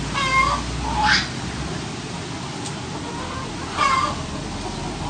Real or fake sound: real